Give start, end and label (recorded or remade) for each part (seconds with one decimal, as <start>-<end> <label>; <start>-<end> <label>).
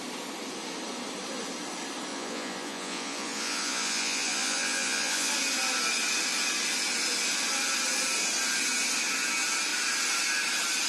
0.0-2.1 recorded; 2.1-5.3 remade; 5.3-10.9 recorded